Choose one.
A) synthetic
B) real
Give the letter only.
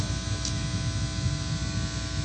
A